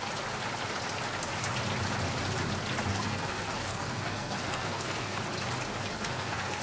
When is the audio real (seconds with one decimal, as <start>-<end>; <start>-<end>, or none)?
0.0-2.9; 5.2-5.9